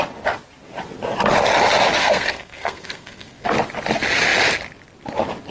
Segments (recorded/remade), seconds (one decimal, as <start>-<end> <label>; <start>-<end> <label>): 0.0-2.0 recorded; 2.0-3.5 remade; 3.5-5.5 recorded